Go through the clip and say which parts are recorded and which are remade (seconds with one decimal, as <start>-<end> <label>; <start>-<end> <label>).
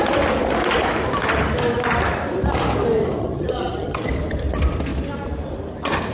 0.0-3.2 recorded; 3.2-4.1 remade; 4.1-6.1 recorded